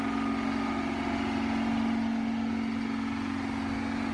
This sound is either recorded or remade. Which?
recorded